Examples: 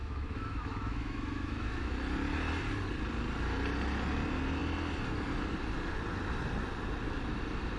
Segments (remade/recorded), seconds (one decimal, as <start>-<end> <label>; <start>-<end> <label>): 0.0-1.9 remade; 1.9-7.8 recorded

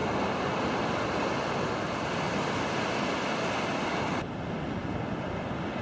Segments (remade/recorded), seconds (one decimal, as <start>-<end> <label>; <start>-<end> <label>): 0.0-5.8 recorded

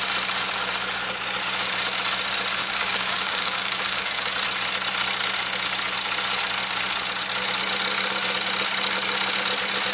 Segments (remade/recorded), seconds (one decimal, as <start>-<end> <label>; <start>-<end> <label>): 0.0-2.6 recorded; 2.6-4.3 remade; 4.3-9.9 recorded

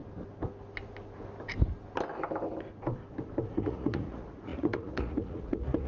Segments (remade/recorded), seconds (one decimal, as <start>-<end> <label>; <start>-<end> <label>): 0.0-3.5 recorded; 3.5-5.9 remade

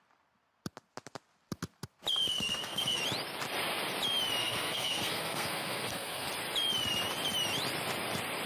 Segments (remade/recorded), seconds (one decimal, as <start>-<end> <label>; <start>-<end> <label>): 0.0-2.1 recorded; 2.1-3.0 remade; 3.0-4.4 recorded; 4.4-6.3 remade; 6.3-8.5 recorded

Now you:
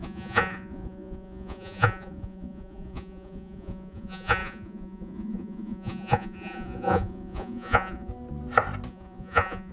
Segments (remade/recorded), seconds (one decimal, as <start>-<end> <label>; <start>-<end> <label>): 0.0-8.1 remade; 8.1-8.9 recorded; 8.9-9.7 remade

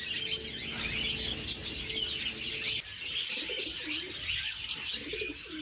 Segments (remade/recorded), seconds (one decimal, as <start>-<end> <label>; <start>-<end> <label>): 0.0-5.6 recorded

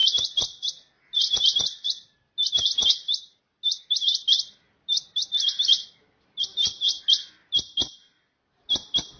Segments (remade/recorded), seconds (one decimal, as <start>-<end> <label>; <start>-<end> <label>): 0.0-9.2 recorded